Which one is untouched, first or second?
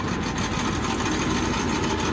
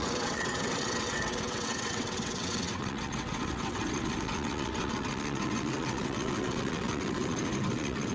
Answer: first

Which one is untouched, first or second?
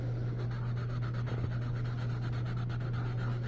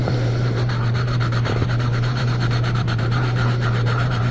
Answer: first